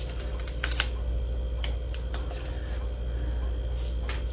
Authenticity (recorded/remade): recorded